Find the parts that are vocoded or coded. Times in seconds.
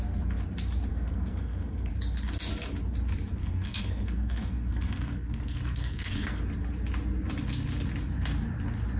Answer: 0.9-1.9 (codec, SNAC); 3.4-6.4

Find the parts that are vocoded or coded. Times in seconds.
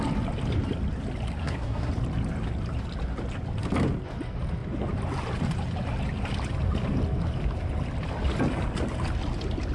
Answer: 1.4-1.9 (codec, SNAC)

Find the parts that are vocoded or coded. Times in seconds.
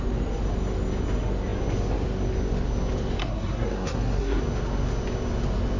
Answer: 3.2-4.4 (codec, SNAC)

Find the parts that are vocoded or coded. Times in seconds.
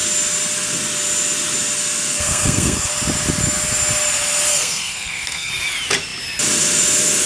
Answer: 2.1-2.9 (codec, SNAC); 4.5-5.5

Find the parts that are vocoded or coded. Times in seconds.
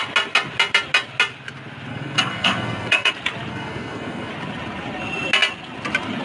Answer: 1.9-3.1 (codec, SNAC); 3.5-4.3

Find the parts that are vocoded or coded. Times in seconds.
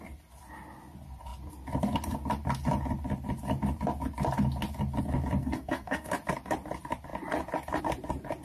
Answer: 5.4-6.1 (codec, SNAC)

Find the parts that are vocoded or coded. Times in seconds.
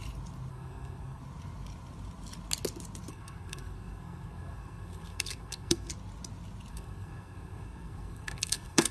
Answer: 0.5-1.2 (codec, SNAC); 3.1-5.9; 6.7-8.9